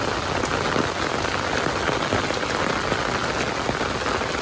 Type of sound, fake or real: real